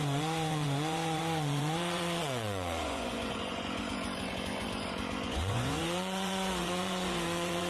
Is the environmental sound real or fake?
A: fake